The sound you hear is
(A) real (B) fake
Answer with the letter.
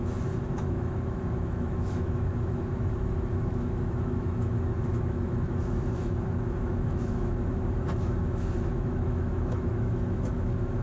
B